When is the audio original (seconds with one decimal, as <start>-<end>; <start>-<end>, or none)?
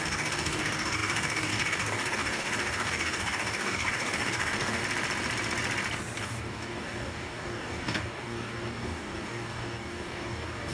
4.8-6.2